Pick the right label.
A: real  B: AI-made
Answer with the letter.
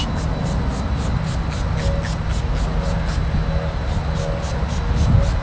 A